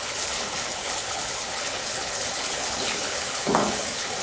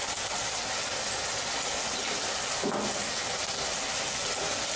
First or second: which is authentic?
second